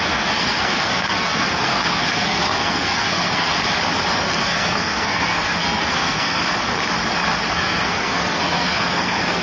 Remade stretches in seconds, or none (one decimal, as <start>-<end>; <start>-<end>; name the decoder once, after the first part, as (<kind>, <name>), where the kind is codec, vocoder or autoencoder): 0.0-3.5 (codec, SNAC); 4.1-6.4; 7.5-9.4